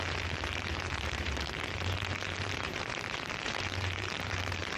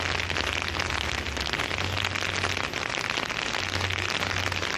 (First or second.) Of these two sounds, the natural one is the second